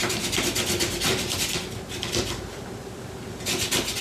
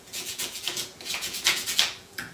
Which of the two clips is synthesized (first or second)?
second